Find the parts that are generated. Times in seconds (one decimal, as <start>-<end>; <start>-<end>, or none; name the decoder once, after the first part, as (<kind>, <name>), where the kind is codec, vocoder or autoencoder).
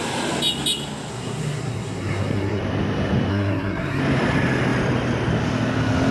1.1-2.6 (codec, SNAC); 3.3-4.0